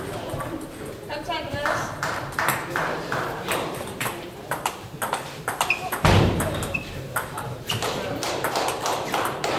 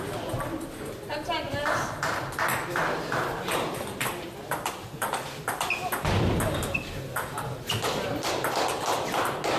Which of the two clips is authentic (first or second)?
second